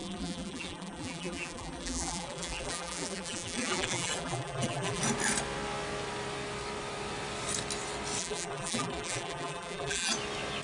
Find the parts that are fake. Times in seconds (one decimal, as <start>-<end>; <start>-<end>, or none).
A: 0.0-5.0; 8.2-10.1